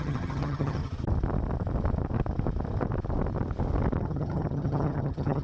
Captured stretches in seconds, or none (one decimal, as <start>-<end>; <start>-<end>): 0.8-4.0